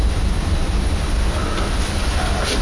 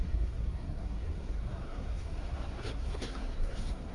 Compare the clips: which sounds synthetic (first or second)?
second